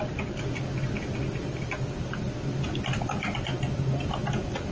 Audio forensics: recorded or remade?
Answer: recorded